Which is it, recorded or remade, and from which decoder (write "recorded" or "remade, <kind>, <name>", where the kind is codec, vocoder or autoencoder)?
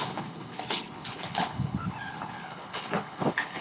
remade, codec, HILCodec